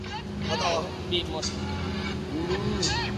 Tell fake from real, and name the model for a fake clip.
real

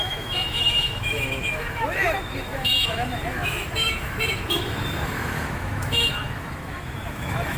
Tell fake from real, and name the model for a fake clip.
fake, autoencoder, DAC-VAE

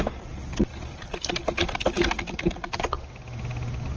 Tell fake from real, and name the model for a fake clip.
real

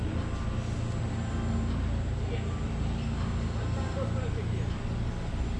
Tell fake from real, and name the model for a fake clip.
real